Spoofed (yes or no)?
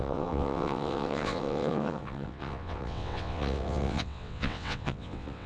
yes